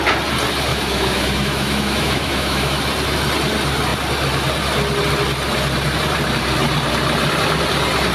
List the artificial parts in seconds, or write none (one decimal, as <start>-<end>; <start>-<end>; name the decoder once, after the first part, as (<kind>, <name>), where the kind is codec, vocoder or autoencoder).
0.7-2.8 (autoencoder, DAC-VAE)